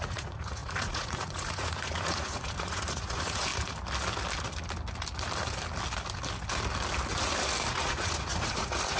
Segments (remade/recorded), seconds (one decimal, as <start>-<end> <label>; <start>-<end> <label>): 0.0-3.5 remade; 3.5-7.7 recorded; 7.7-9.0 remade